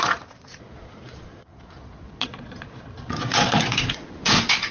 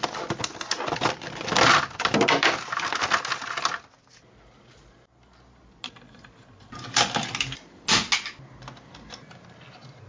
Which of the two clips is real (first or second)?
second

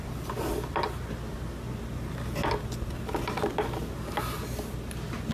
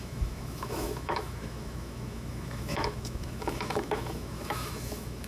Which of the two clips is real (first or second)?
first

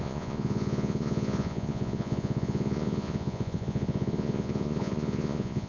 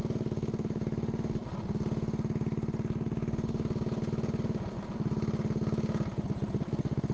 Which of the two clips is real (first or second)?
second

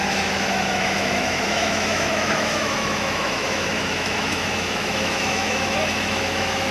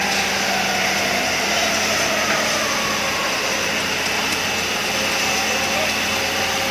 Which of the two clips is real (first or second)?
second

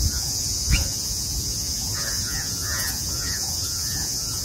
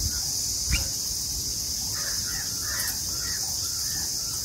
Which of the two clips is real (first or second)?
second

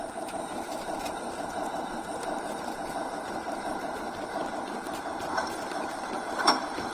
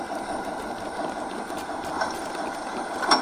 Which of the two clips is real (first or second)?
second